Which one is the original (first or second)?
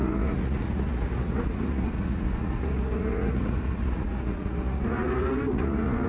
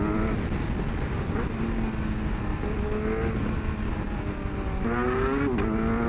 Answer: second